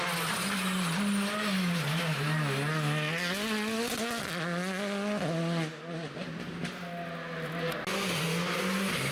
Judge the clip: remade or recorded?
recorded